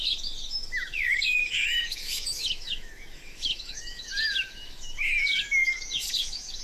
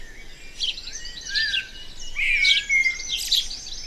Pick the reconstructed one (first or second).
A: first